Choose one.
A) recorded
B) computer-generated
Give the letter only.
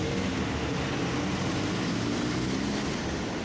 A